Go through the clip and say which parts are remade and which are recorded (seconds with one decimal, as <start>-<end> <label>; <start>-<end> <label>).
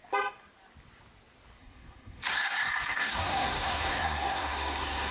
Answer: 0.0-1.6 recorded; 1.6-5.1 remade